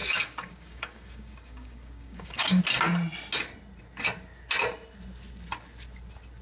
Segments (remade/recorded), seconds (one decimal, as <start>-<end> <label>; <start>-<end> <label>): 0.0-2.6 remade; 2.6-6.4 recorded